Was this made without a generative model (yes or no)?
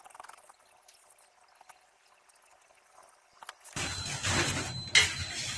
yes